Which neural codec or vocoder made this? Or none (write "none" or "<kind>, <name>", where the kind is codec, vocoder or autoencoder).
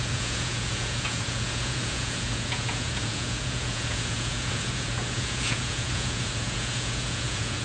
vocoder, Vocos